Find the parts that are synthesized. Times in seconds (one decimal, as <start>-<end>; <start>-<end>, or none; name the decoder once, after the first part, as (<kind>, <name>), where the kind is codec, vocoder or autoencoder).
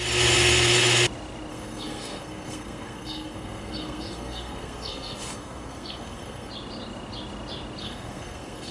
1.5-6.5 (codec, SNAC); 7.8-8.7